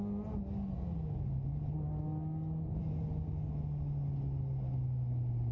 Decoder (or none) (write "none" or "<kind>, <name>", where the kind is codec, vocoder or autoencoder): none